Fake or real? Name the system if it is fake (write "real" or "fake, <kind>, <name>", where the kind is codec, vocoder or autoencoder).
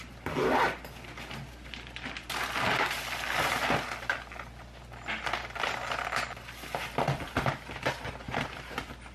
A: real